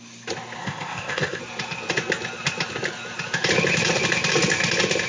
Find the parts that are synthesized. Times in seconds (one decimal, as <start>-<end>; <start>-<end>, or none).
0.6-1.4